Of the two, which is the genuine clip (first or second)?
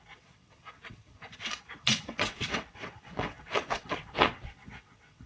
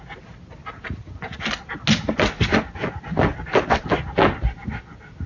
second